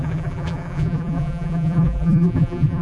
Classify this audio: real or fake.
fake